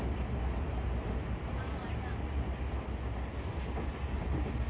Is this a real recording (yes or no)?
yes